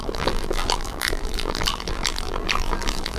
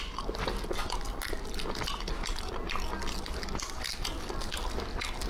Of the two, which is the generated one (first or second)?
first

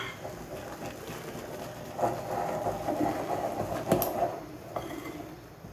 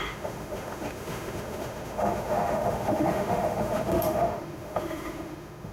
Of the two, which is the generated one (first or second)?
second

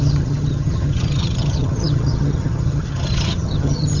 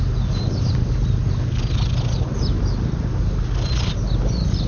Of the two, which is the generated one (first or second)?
first